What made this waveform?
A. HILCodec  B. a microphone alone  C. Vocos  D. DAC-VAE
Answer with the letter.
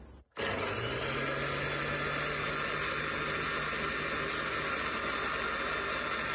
B